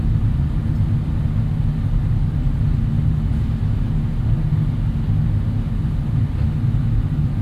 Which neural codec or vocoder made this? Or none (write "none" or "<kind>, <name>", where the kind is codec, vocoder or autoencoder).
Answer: none